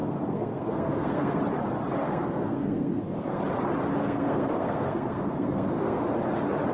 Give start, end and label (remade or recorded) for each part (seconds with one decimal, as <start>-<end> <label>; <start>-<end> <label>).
0.0-1.4 remade; 1.4-2.0 recorded; 2.0-3.4 remade; 3.4-4.0 recorded; 4.0-6.0 remade; 6.0-6.7 recorded